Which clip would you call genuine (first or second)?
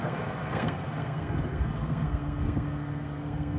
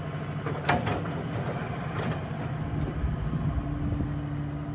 second